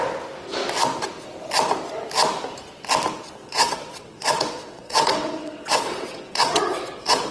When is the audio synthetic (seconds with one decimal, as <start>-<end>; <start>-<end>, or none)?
3.4-7.3